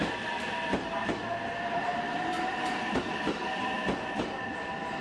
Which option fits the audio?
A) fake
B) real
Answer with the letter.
A